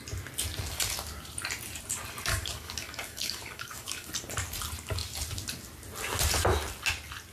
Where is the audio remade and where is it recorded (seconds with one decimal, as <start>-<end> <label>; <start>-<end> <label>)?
0.0-2.3 recorded; 2.3-4.1 remade; 4.1-7.3 recorded